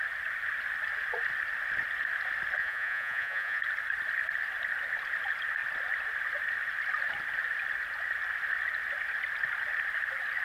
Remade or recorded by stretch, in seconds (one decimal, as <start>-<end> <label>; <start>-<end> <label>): 0.0-2.6 recorded; 2.6-3.6 remade; 3.6-10.4 recorded